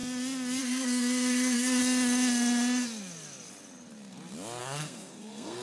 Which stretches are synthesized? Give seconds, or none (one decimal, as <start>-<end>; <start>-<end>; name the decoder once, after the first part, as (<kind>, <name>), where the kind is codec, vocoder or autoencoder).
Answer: 0.6-1.8 (codec, SNAC); 4.6-5.6

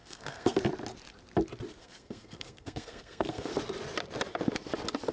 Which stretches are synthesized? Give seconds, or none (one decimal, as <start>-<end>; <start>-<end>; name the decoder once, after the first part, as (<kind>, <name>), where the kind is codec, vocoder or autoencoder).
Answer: 0.0-0.6 (codec, SNAC); 1.8-3.5

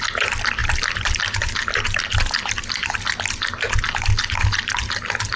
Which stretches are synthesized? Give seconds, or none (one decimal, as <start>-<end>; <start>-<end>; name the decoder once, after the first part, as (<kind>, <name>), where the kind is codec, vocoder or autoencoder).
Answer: none

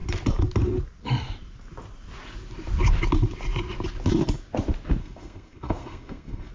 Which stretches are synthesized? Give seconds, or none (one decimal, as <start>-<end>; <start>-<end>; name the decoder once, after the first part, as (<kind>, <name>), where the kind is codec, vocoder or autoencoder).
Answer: 5.0-6.5 (codec, SNAC)

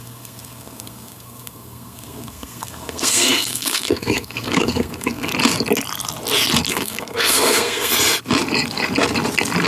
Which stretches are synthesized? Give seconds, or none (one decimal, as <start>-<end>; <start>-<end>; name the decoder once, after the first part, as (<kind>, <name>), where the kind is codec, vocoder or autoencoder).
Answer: 0.0-5.3 (codec, SNAC); 6.7-7.9